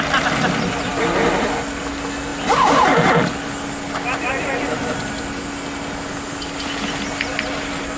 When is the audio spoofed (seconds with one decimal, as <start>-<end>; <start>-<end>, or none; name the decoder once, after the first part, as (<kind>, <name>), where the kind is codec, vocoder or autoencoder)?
none